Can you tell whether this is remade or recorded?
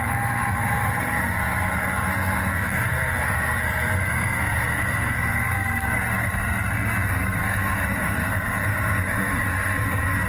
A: remade